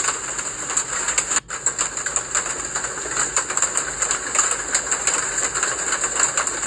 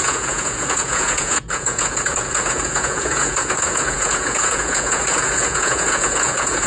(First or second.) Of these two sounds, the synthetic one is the second